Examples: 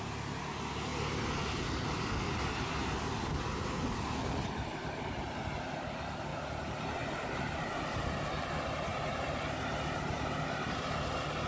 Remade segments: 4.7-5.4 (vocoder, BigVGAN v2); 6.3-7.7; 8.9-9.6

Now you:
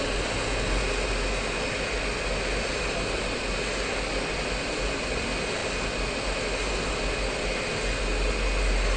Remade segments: none

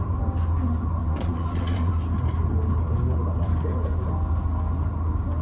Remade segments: 1.0-1.9 (vocoder, Vocos)

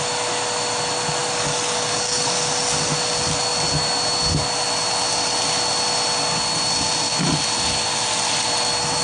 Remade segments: 1.2-2.4 (codec, DAC)

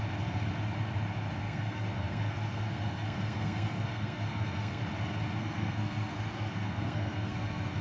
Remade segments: 1.4-4.8 (codec, SNAC); 5.4-7.8